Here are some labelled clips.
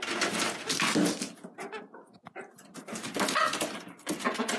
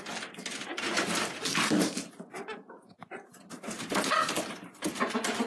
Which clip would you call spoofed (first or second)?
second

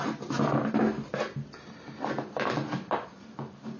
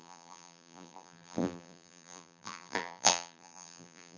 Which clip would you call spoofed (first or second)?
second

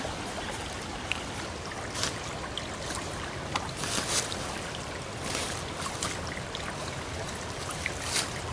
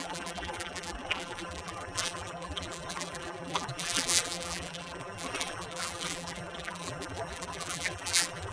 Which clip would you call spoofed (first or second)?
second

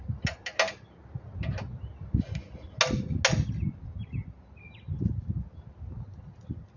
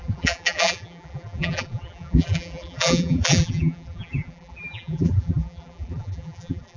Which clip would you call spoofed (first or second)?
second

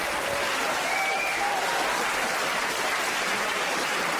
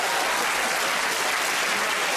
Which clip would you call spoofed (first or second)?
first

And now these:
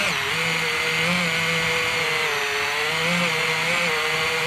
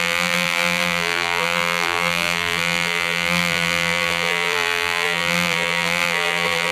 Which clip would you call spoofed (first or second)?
second